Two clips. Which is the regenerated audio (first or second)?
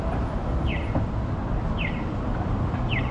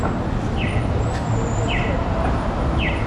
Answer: first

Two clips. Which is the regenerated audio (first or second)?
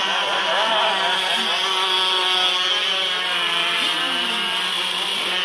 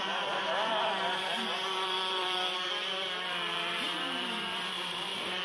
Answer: second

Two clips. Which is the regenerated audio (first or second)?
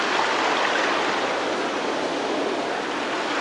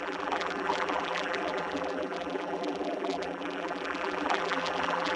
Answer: second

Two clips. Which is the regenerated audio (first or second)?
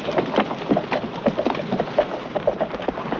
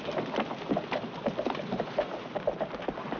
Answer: first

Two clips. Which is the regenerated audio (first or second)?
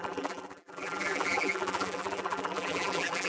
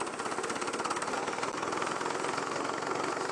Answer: first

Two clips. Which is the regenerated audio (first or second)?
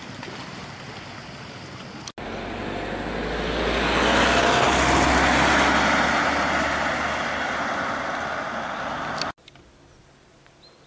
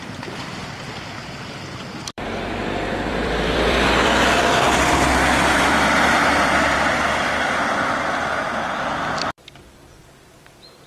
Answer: second